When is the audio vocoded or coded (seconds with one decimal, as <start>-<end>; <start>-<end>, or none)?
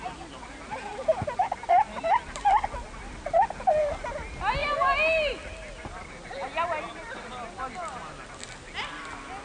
4.6-6.0